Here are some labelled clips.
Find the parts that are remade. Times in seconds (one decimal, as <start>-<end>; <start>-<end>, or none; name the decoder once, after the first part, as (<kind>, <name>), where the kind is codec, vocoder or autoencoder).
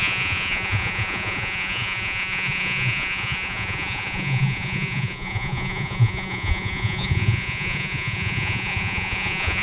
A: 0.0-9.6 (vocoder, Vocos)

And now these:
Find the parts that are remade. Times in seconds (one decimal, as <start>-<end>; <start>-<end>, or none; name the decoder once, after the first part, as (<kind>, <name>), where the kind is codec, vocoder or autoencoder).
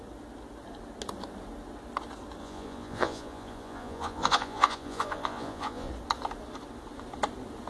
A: 2.4-5.9 (vocoder, Vocos)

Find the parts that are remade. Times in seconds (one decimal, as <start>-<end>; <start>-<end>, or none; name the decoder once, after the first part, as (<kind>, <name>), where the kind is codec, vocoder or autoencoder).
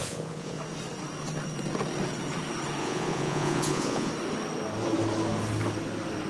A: 0.0-0.6 (vocoder, Vocos); 2.8-4.1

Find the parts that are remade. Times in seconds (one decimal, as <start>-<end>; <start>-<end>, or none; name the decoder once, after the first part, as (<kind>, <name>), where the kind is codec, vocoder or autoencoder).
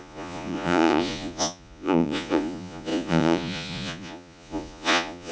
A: 0.0-5.3 (vocoder, Vocos)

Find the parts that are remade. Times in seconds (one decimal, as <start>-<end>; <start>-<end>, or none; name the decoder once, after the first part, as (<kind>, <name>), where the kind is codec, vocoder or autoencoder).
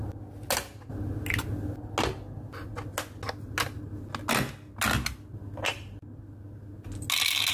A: none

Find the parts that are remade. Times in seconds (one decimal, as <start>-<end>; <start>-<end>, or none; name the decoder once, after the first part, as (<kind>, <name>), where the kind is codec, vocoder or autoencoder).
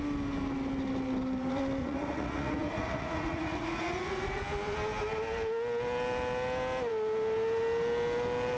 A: 1.8-4.4 (vocoder, Vocos)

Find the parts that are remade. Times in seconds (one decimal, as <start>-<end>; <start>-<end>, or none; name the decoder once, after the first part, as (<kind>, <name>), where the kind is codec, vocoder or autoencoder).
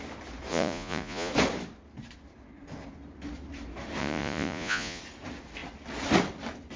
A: 0.5-1.3 (vocoder, Vocos); 4.0-5.0